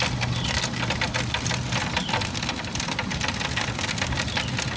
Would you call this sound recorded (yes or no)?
yes